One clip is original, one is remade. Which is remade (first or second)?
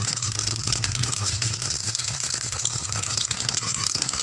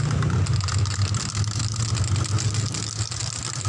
first